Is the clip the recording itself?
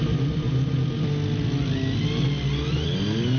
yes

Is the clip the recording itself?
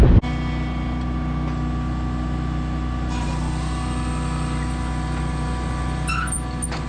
yes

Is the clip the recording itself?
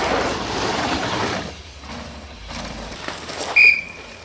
no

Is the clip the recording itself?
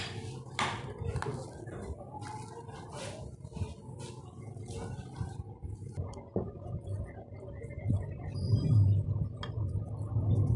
yes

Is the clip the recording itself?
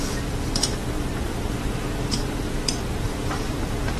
no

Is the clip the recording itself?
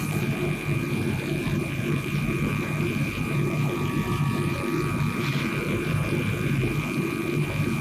no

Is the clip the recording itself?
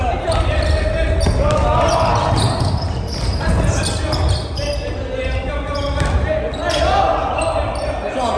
yes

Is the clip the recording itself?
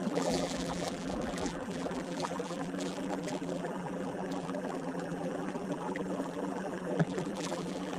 no